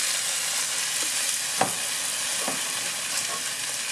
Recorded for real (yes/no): yes